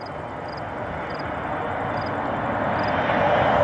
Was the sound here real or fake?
real